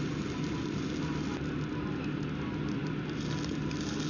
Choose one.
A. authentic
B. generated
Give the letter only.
A